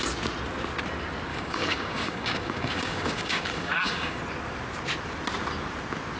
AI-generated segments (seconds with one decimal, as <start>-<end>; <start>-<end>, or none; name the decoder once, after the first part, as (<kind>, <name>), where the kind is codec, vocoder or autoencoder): 1.3-4.2 (codec, DAC)